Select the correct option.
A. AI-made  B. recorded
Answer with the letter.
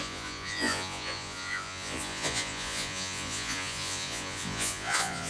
A